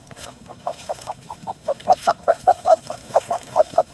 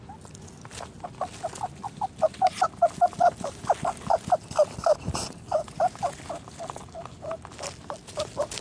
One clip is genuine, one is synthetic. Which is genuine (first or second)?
second